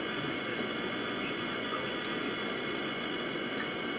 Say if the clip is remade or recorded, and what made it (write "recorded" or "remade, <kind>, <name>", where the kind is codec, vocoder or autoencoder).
remade, vocoder, Vocos